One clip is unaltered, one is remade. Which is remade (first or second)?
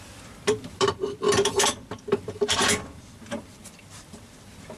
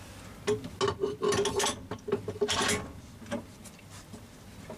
first